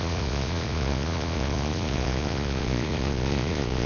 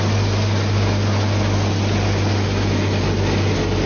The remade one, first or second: first